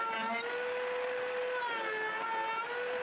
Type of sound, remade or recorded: recorded